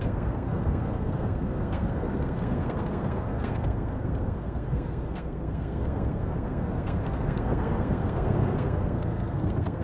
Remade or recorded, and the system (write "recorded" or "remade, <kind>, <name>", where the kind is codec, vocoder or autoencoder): remade, codec, SNAC